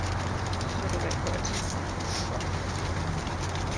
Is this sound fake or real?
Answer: real